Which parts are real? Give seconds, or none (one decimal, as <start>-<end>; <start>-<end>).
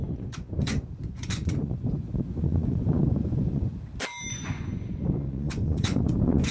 3.7-4.3